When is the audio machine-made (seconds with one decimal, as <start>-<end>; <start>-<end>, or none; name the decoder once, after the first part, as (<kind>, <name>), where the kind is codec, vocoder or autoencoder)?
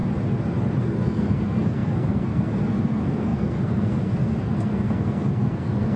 0.8-6.0 (codec, SNAC)